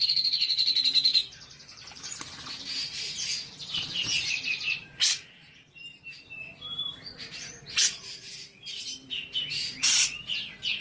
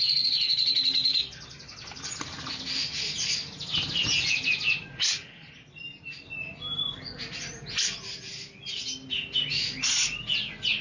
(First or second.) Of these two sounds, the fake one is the first